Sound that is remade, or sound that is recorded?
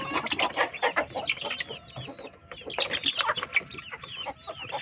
recorded